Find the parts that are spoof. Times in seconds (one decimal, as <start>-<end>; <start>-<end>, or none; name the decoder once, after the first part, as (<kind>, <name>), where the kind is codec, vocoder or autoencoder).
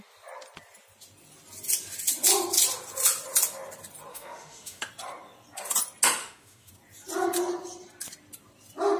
4.1-4.8 (autoencoder, DAC-VAE); 6.2-6.7